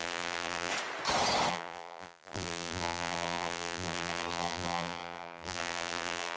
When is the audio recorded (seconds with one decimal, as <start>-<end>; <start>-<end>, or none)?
0.7-1.5